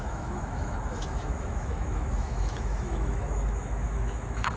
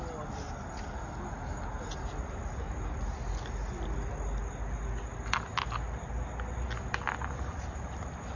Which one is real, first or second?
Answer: second